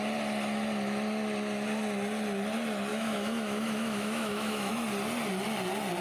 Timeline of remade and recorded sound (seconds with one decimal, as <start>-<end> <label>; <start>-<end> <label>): 0.0-2.9 recorded; 2.9-4.7 remade; 4.7-6.0 recorded